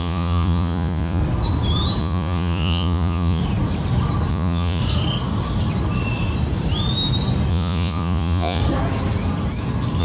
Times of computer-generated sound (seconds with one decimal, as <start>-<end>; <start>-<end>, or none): 0.0-1.2; 2.0-3.4; 4.3-4.8; 7.5-8.6